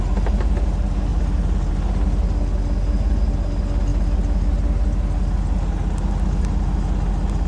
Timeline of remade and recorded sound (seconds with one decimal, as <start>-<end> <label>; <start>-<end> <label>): 0.0-7.5 recorded

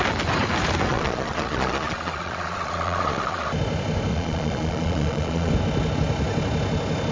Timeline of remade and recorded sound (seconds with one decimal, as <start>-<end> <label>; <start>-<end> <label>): 0.0-0.9 recorded; 0.9-3.5 remade; 3.5-4.1 recorded; 4.1-5.5 remade; 5.5-7.1 recorded

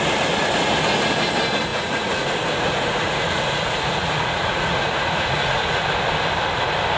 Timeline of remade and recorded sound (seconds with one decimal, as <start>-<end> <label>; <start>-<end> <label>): 0.0-1.7 recorded; 1.7-5.9 remade; 5.9-7.0 recorded

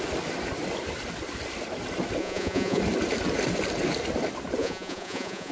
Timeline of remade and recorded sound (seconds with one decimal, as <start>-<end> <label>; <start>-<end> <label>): 0.0-2.2 recorded; 2.2-2.8 remade; 2.8-4.6 recorded; 4.6-5.5 remade

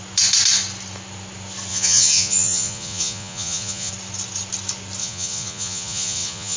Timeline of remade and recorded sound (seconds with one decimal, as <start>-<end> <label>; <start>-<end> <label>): 0.0-1.7 recorded; 1.7-3.9 remade; 3.9-5.0 recorded; 5.0-6.6 remade

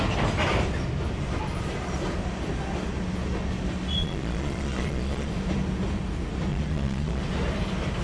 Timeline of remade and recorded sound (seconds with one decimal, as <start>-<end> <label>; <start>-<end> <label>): 0.0-4.0 recorded; 4.0-5.3 remade; 5.3-6.5 recorded; 6.5-7.2 remade; 7.2-8.0 recorded